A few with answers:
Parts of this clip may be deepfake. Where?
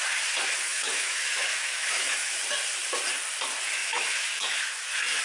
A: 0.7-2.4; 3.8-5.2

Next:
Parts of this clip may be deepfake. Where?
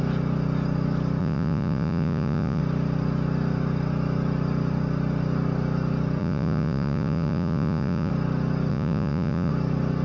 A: 1.2-2.6; 6.2-8.1; 8.7-9.5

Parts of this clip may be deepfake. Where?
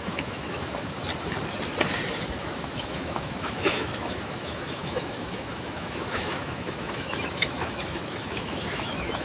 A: 0.0-1.1; 2.4-9.2